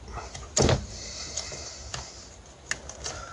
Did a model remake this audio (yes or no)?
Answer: no